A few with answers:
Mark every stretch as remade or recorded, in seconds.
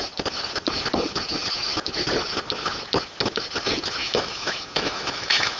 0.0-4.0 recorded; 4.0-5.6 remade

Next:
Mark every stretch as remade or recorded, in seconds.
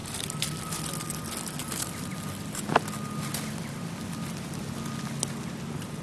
0.0-0.8 remade; 0.8-1.6 recorded; 1.6-4.7 remade; 4.7-6.0 recorded